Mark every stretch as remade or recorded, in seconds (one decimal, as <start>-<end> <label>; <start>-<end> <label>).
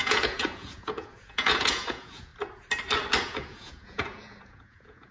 0.0-2.3 remade; 2.3-3.2 recorded; 3.2-5.1 remade